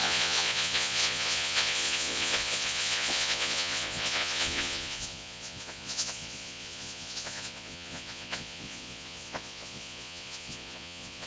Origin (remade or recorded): remade